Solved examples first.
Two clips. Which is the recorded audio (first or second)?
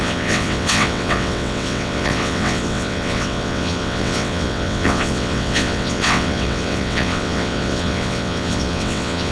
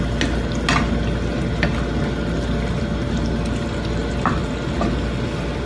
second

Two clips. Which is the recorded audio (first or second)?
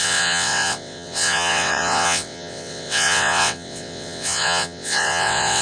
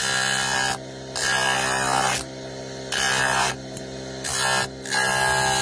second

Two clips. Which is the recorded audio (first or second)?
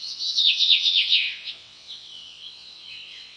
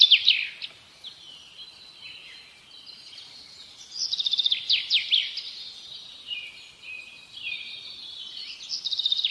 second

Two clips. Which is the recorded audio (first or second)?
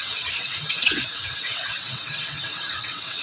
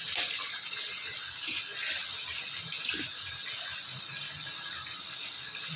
second